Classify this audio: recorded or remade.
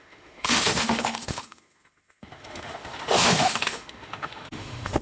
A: remade